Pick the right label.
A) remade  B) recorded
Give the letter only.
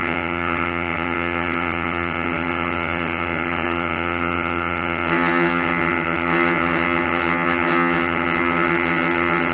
A